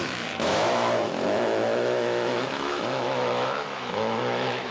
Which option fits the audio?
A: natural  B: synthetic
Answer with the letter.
B